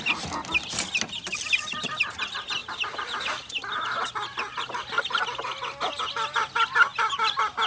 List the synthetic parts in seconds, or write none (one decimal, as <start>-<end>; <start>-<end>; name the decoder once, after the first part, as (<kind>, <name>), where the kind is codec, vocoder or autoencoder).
none